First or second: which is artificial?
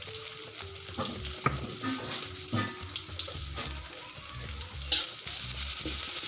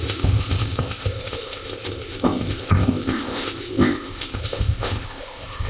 second